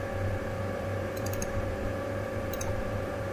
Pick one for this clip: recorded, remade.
remade